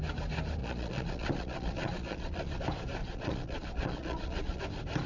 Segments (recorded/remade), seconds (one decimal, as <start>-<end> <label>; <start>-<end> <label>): 0.0-0.6 recorded; 0.6-2.6 remade; 2.6-3.0 recorded; 3.0-4.6 remade; 4.6-5.1 recorded